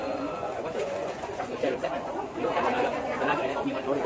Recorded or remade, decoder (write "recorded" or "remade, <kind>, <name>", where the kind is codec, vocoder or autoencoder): remade, vocoder, Vocos